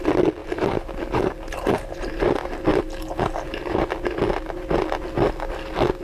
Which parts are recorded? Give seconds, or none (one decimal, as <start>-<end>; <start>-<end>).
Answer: 0.0-0.4; 2.2-6.0